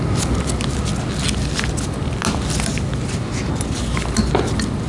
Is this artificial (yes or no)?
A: no